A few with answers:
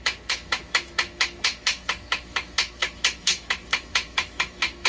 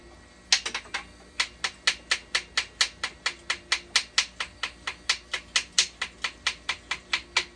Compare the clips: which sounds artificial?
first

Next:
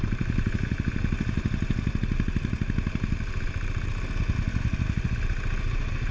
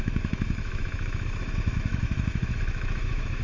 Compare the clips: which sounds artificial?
second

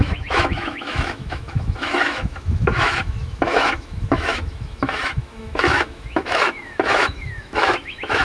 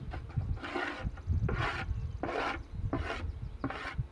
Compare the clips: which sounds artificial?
first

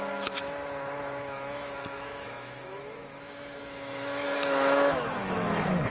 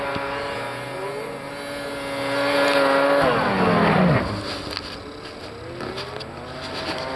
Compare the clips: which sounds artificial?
first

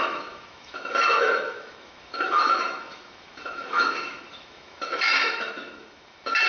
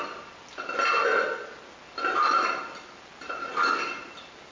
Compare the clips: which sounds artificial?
first